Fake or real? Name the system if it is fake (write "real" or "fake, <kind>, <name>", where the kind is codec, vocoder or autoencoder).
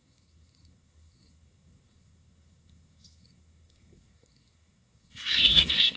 fake, codec, SNAC